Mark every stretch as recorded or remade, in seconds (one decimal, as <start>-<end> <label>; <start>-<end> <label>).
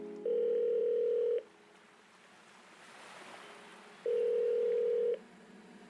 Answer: 0.0-5.9 recorded